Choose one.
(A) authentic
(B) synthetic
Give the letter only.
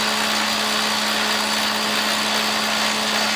A